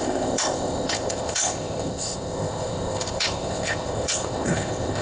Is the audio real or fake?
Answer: fake